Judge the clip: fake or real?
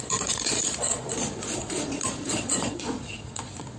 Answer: fake